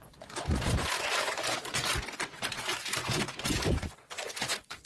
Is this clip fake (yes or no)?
yes